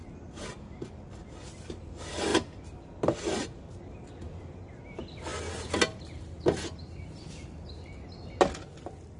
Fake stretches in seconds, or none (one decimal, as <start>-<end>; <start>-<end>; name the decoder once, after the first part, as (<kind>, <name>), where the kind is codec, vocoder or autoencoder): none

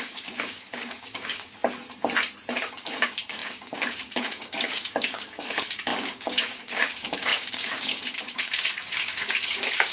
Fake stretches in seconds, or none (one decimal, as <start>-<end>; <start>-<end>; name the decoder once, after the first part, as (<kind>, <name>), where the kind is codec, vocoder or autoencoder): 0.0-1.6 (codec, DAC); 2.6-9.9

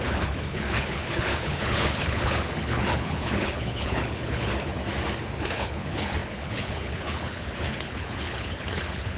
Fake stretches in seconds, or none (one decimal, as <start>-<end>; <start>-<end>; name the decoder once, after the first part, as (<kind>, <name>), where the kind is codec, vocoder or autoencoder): 0.0-4.8 (codec, HILCodec); 5.4-9.2

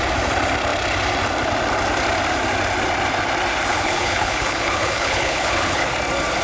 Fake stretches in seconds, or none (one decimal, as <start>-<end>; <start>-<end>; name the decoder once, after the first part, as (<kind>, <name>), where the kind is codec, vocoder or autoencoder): 3.7-5.9 (codec, HILCodec)

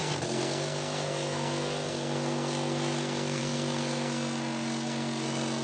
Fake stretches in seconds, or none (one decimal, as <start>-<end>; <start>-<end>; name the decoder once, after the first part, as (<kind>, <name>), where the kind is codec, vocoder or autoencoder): 0.0-5.6 (codec, SNAC)

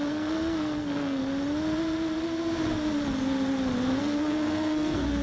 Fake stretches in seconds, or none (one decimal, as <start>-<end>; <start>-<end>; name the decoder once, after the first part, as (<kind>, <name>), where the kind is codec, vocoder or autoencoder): 0.0-1.2 (codec, SNAC); 4.0-5.2

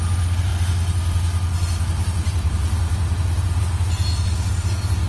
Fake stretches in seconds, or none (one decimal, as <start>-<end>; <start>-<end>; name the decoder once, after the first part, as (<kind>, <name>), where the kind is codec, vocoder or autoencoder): none